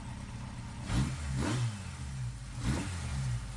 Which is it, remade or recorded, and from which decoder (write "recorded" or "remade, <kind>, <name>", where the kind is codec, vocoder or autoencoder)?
recorded